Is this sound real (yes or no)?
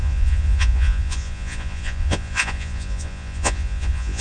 no